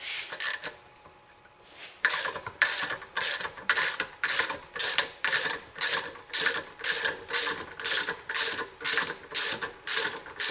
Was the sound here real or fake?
fake